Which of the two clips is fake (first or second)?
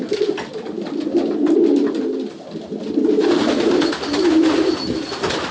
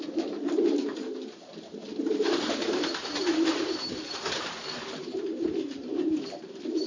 second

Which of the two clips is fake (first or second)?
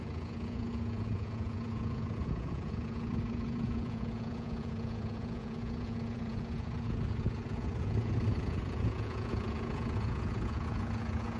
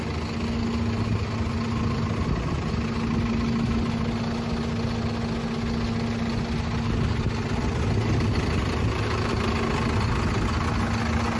first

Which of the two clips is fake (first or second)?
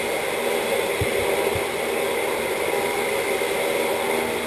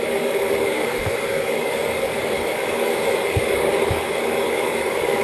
second